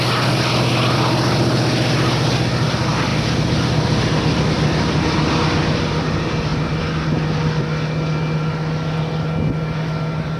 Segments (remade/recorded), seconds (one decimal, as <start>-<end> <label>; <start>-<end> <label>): 0.0-10.4 recorded